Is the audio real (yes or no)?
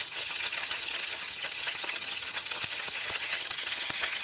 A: no